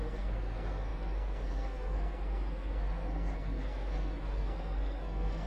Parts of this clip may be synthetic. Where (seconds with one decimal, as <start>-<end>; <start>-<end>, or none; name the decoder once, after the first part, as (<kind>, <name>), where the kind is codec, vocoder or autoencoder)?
0.0-5.5 (codec, SNAC)